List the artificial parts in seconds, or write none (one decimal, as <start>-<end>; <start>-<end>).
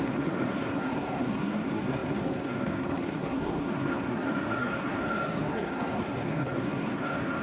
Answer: 0.0-7.4